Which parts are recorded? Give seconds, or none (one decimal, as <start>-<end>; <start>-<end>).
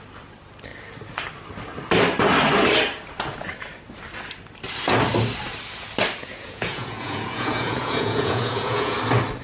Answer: 0.0-6.2; 9.0-9.4